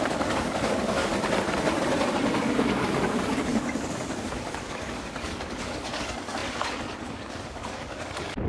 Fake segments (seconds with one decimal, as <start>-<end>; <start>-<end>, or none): 0.0-1.1; 2.3-8.5